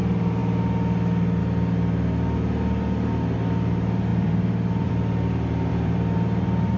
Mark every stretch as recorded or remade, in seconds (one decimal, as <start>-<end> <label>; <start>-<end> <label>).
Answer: 0.0-4.1 recorded; 4.1-4.9 remade; 4.9-5.7 recorded; 5.7-6.8 remade